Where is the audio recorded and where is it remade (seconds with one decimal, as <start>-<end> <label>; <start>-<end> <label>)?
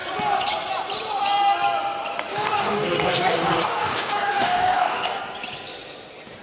0.0-2.3 recorded; 2.3-5.2 remade; 5.2-6.4 recorded